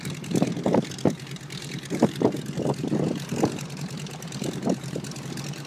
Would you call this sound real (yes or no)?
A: no